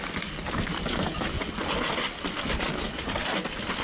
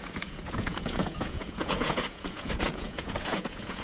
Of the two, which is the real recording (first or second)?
first